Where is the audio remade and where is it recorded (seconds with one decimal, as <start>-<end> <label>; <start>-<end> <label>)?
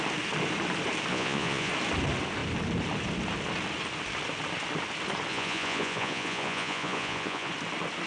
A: 0.0-1.1 recorded; 1.1-1.7 remade; 1.7-5.3 recorded; 5.3-7.5 remade; 7.5-8.1 recorded